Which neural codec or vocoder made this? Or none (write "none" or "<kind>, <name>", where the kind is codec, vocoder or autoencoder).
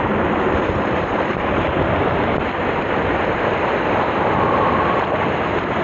none